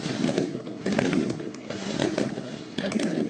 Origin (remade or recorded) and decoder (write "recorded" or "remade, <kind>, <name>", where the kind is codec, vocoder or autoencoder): remade, codec, SNAC